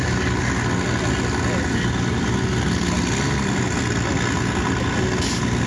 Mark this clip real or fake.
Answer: real